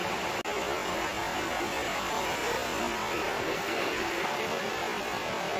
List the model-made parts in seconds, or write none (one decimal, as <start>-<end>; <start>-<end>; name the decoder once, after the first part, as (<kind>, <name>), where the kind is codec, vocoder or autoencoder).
3.4-4.4 (codec, SNAC)